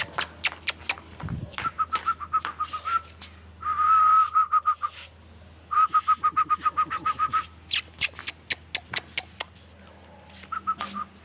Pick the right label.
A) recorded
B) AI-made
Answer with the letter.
A